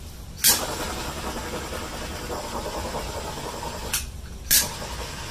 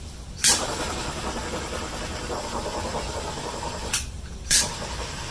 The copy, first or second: second